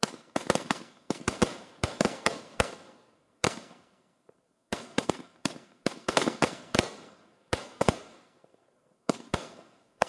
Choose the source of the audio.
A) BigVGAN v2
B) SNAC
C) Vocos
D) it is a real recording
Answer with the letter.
B